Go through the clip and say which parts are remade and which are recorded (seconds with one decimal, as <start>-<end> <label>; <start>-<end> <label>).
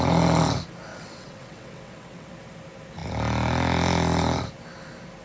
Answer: 0.0-0.9 recorded; 0.9-2.3 remade; 2.3-5.2 recorded